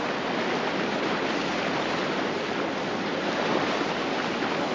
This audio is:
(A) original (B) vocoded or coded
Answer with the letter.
A